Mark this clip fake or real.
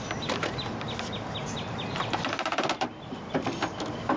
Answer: real